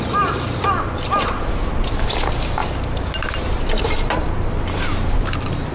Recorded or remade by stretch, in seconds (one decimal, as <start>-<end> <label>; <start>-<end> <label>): 0.0-5.7 recorded